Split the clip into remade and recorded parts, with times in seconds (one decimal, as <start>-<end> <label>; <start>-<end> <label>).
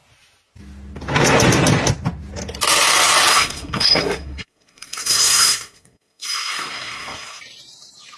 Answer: 0.0-3.3 recorded; 3.3-7.4 remade; 7.4-8.2 recorded